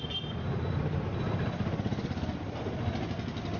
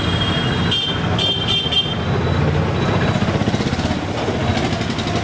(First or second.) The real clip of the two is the second